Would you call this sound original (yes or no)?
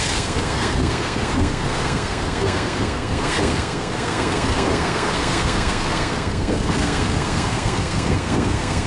no